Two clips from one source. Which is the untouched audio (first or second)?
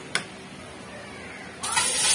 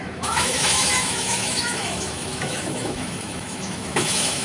first